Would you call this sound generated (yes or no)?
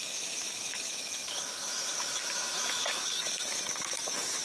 yes